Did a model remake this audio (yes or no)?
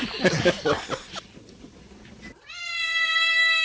no